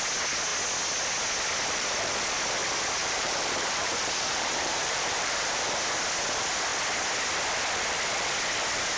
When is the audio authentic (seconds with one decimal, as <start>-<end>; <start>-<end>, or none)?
0.0-3.0; 5.6-9.0